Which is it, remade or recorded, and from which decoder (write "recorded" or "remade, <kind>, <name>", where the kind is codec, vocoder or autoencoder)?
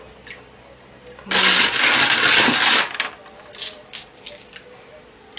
recorded